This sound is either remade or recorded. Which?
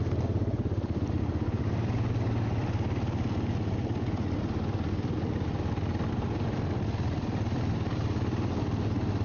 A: recorded